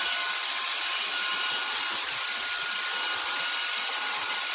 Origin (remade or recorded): recorded